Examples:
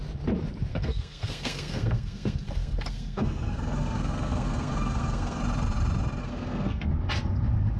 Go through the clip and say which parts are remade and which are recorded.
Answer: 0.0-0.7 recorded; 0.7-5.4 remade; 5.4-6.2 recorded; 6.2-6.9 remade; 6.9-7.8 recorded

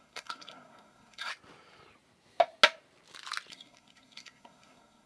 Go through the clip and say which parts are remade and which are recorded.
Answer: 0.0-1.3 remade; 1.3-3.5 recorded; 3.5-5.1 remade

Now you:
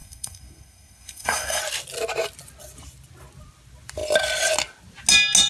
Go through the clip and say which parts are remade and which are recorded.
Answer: 0.0-1.6 remade; 1.6-5.5 recorded

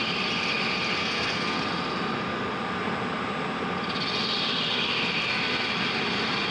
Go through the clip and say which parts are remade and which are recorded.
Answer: 0.0-1.0 recorded; 1.0-1.6 remade; 1.6-6.5 recorded

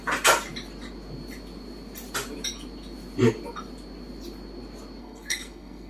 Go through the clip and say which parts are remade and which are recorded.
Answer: 0.0-5.0 recorded; 5.0-5.9 remade